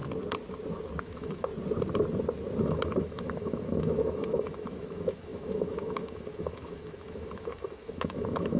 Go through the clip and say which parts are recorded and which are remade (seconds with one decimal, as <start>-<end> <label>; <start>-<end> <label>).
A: 0.0-1.0 recorded; 1.0-1.5 remade; 1.5-2.6 recorded; 2.6-8.6 remade